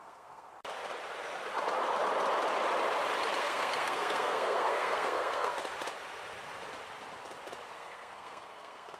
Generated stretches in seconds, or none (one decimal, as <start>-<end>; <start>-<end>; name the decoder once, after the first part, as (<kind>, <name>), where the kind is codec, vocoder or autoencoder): 0.0-0.5 (codec, SNAC); 3.4-5.6; 7.7-9.0